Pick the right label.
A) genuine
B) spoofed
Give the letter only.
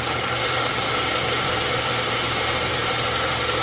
B